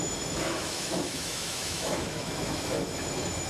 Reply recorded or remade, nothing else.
remade